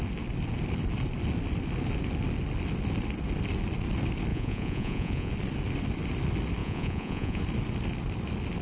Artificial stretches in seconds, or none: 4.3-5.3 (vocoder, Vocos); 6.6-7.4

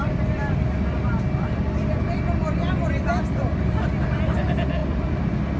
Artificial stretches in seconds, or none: none

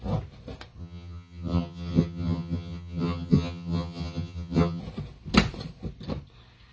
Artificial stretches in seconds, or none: 0.8-4.8 (vocoder, HiFi-GAN)

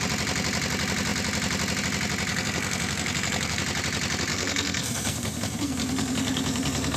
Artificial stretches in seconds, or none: 2.3-3.6 (codec, SNAC); 4.3-7.0

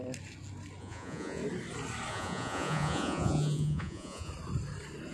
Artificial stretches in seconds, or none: 0.8-1.4 (vocoder, Vocos); 2.1-4.3